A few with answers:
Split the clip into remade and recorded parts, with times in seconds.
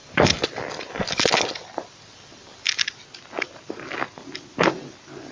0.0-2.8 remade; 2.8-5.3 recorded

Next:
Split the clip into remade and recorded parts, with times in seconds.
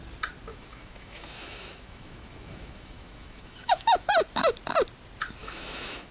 0.0-0.5 recorded; 0.5-4.1 remade; 4.1-5.4 recorded; 5.4-6.1 remade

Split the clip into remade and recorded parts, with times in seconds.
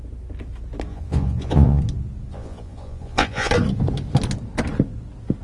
0.0-0.9 recorded; 0.9-1.8 remade; 1.8-2.3 recorded; 2.3-3.5 remade; 3.5-5.4 recorded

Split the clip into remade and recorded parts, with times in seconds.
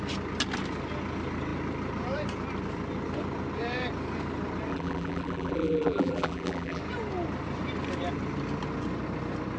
0.0-4.7 recorded; 4.7-6.8 remade; 6.8-9.6 recorded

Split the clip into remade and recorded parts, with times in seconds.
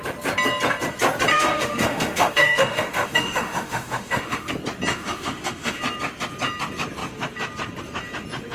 0.0-1.3 recorded; 1.3-4.5 remade; 4.5-4.9 recorded; 4.9-5.8 remade; 5.8-8.5 recorded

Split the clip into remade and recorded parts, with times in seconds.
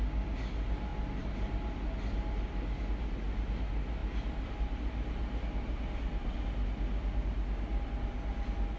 0.0-8.8 recorded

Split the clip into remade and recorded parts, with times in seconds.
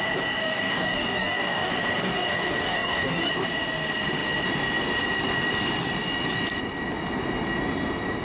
0.0-0.4 recorded; 0.4-1.7 remade; 1.7-2.1 recorded; 2.1-3.3 remade; 3.3-8.2 recorded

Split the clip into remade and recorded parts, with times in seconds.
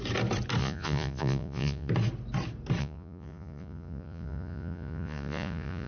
0.0-0.6 recorded; 0.6-1.9 remade; 1.9-2.8 recorded; 2.8-5.9 remade